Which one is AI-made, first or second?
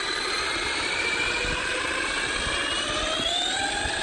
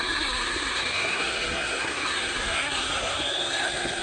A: second